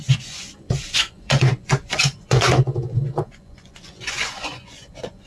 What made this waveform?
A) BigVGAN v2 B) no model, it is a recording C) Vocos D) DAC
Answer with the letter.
C